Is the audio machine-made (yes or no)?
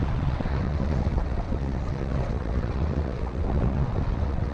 yes